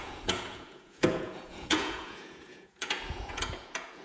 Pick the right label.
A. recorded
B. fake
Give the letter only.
B